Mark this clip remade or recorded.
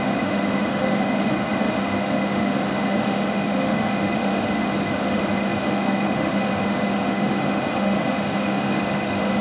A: remade